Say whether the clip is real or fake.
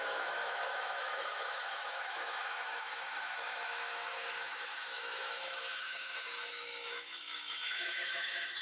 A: fake